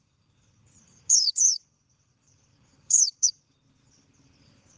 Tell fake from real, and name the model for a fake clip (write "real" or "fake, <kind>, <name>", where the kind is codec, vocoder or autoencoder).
fake, codec, HILCodec